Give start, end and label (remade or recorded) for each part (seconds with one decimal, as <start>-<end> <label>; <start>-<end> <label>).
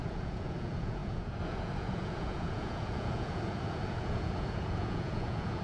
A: 0.0-5.6 remade